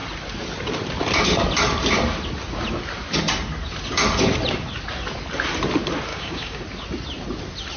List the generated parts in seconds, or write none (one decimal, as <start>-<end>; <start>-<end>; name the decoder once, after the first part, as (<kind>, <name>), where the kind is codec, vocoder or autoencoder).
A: 6.1-6.6 (codec, DAC)